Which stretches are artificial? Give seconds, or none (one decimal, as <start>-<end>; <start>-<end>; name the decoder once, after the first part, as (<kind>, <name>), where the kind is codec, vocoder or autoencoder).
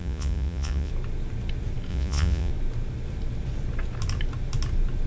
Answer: 0.0-0.9 (vocoder, Vocos); 1.9-2.5